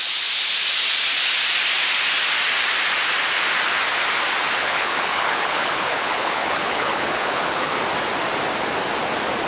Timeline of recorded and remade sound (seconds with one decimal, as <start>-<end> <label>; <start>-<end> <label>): 0.0-4.6 recorded; 4.6-7.8 remade; 7.8-9.5 recorded

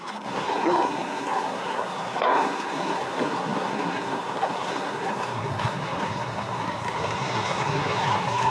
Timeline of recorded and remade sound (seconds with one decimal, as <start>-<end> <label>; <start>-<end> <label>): 0.0-8.5 remade